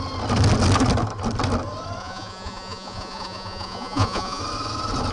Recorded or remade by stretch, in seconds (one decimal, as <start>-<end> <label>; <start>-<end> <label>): 0.0-2.0 recorded; 2.0-4.4 remade; 4.4-5.1 recorded